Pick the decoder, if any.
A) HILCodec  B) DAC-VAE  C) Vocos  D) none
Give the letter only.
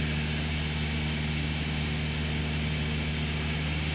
D